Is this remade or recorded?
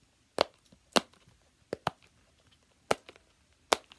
recorded